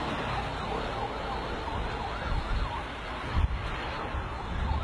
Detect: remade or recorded recorded